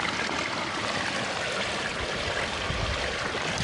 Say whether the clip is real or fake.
real